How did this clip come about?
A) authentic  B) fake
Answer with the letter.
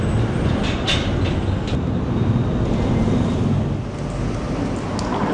A